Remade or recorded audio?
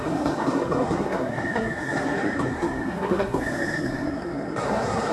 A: remade